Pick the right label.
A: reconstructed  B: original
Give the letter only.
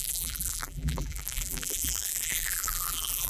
A